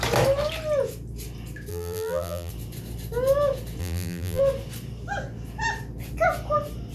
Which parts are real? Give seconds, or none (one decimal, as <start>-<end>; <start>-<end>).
0.0-1.7; 2.5-3.8; 4.4-6.9